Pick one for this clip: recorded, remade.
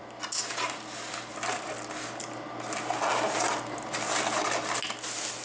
recorded